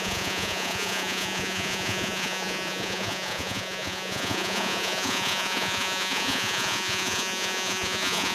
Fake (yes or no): yes